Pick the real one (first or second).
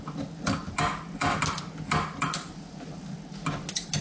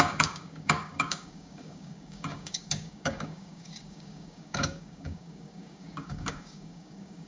first